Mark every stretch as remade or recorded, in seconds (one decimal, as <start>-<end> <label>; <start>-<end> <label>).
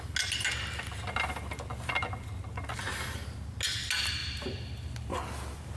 0.0-5.8 recorded